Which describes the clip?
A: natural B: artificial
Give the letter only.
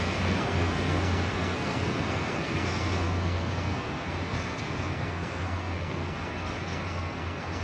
B